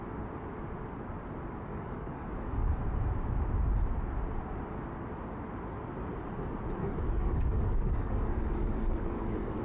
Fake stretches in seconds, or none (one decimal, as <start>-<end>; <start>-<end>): 1.7-2.7; 6.8-9.6